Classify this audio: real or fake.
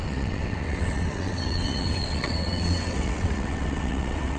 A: fake